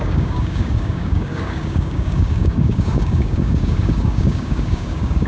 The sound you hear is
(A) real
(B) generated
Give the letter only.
B